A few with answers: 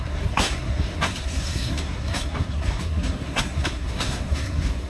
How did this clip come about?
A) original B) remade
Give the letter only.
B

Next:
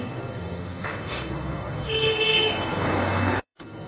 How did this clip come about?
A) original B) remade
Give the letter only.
B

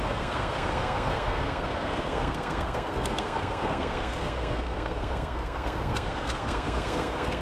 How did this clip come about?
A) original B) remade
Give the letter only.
B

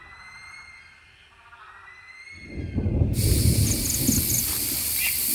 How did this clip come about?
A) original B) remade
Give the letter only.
A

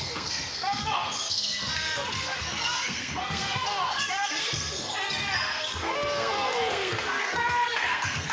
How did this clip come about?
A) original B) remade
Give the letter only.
B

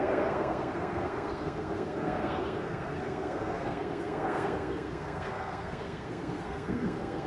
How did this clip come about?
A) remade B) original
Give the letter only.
A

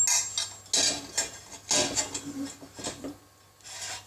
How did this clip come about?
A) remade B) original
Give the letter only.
B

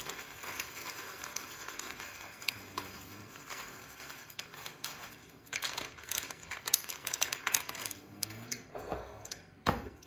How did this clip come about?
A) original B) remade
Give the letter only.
B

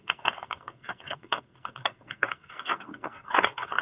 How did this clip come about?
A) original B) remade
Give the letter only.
B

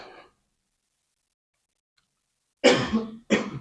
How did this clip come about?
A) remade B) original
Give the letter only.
B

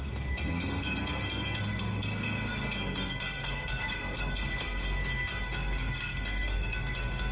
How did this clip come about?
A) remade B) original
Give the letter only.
A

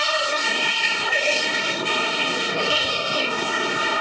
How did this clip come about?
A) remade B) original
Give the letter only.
A